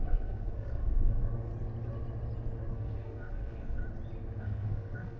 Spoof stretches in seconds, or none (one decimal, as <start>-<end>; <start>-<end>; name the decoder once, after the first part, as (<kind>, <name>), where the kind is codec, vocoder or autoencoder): 0.0-1.5 (codec, SNAC); 2.7-3.8; 4.4-5.2